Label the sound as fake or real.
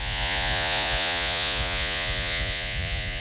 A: fake